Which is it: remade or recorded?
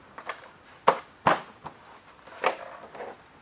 recorded